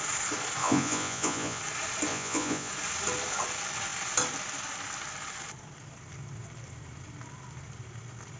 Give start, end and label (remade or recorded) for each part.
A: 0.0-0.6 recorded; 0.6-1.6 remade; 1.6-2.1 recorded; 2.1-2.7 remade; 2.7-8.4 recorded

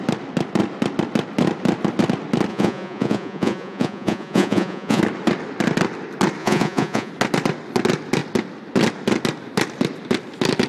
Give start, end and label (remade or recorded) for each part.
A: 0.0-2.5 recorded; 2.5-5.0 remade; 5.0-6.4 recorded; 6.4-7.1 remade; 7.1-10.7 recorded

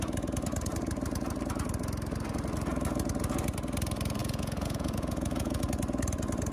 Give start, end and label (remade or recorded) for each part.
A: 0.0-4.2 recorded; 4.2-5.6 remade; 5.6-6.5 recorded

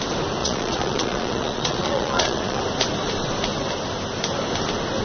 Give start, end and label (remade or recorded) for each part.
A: 0.0-0.4 recorded; 0.4-2.6 remade; 2.6-5.0 recorded

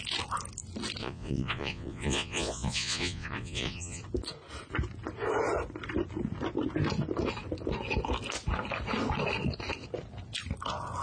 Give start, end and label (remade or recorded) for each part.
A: 0.0-1.0 recorded; 1.0-4.0 remade; 4.0-11.0 recorded